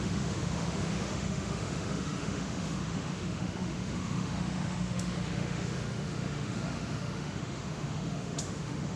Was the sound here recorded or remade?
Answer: remade